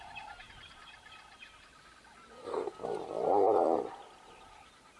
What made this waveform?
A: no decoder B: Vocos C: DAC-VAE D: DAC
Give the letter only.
A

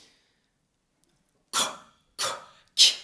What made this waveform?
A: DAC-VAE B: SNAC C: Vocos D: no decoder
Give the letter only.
D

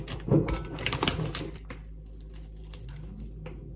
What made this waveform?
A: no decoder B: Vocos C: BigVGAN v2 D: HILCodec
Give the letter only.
A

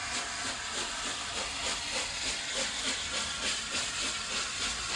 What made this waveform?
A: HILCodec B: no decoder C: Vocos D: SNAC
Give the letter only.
B